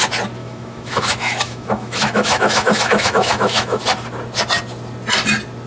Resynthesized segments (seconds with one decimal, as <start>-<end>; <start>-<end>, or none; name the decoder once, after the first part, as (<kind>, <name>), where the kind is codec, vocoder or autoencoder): 0.4-3.8 (autoencoder, DAC-VAE)